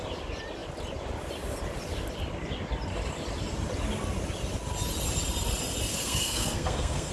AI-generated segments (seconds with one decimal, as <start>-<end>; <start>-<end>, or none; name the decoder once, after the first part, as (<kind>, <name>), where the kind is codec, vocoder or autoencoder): 5.9-7.1 (codec, SNAC)